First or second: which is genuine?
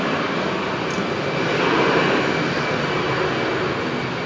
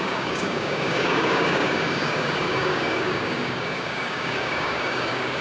first